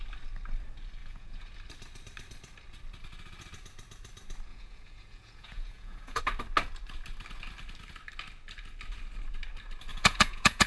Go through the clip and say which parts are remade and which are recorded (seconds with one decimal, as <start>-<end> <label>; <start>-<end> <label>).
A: 0.0-1.0 recorded; 1.0-1.5 remade; 1.5-4.5 recorded; 4.5-6.2 remade; 6.2-9.9 recorded; 9.9-10.7 remade